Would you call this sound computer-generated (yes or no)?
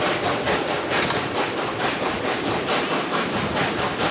no